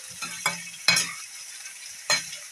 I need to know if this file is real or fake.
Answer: fake